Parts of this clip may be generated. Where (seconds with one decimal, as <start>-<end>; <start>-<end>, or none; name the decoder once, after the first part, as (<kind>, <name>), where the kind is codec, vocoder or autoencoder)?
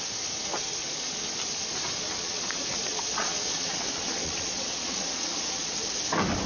2.0-5.9 (vocoder, Vocos)